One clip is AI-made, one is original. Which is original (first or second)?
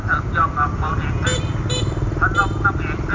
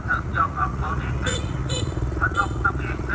first